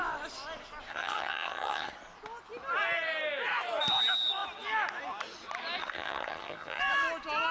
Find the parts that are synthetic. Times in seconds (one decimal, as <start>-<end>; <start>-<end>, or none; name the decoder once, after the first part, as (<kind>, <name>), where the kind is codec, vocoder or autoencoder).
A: 0.9-1.9 (vocoder, HiFi-GAN); 5.8-6.8